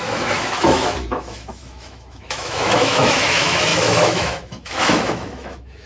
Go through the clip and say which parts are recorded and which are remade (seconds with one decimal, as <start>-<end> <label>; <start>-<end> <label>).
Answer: 0.0-5.9 remade